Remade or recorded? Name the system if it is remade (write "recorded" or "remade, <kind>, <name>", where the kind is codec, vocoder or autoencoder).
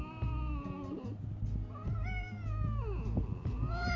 recorded